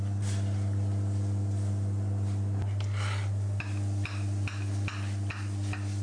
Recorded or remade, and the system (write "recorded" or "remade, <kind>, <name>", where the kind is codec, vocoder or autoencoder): recorded